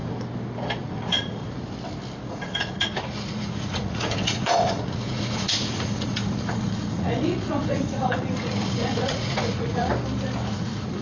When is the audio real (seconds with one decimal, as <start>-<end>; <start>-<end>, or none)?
0.0-0.8; 1.4-2.3; 9.9-10.5